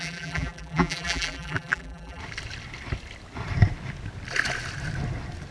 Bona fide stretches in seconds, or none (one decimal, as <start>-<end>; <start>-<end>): 2.2-5.5